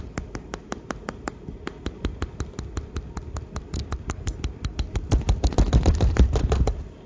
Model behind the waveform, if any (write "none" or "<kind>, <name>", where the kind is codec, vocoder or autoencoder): none